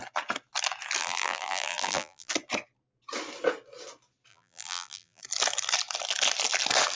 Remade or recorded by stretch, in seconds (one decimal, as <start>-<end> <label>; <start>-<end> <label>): 0.0-1.0 recorded; 1.0-2.3 remade; 2.3-4.3 recorded; 4.3-5.2 remade; 5.2-7.0 recorded